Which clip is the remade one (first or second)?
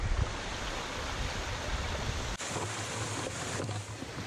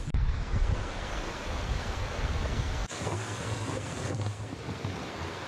second